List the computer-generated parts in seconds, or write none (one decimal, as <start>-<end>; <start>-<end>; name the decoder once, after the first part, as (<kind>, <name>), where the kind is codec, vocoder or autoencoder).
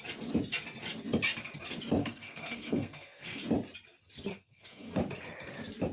2.0-3.4 (codec, SNAC); 4.3-4.9